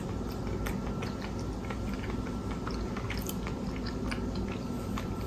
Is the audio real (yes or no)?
yes